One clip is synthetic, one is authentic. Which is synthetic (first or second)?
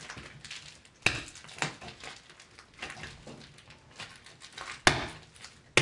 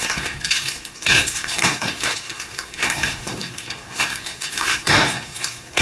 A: second